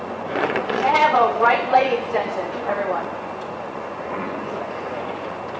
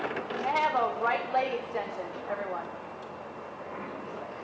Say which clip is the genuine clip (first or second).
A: second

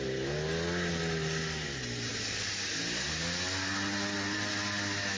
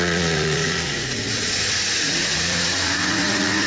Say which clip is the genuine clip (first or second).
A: first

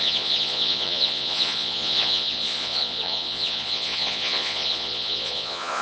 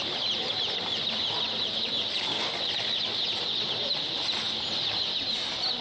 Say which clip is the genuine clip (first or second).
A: second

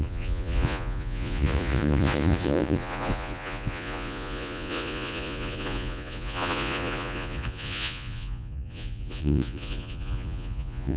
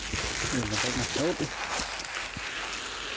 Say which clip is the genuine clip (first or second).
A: second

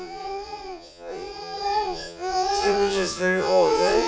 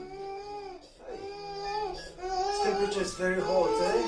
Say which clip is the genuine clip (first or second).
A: second